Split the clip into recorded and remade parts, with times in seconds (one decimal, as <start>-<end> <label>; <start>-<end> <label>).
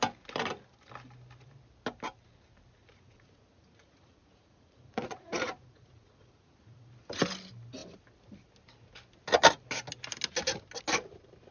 0.0-2.8 recorded; 2.8-6.9 remade; 6.9-11.5 recorded